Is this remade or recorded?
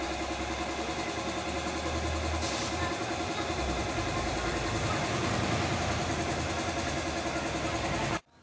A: recorded